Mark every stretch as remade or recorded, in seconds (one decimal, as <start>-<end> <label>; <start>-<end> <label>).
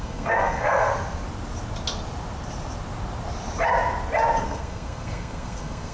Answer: 0.0-0.9 remade; 0.9-4.4 recorded; 4.4-5.9 remade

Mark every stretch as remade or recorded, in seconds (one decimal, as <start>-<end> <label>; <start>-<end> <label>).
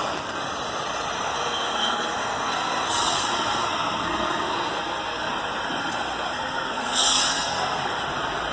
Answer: 0.0-1.3 recorded; 1.3-5.3 remade; 5.3-5.8 recorded; 5.8-8.0 remade; 8.0-8.5 recorded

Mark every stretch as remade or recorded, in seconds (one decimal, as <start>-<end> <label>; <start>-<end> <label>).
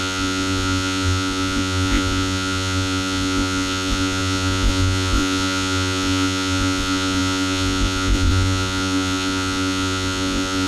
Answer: 0.0-10.7 remade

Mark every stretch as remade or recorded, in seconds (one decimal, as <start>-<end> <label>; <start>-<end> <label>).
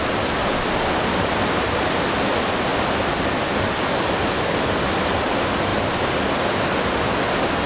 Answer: 0.0-7.7 recorded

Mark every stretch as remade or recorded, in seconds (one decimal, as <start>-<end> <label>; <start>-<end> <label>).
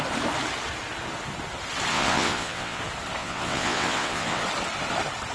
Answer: 0.0-1.9 recorded; 1.9-2.8 remade; 2.8-3.2 recorded; 3.2-4.4 remade; 4.4-5.3 recorded